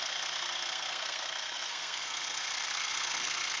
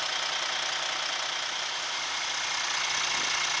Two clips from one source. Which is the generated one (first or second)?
first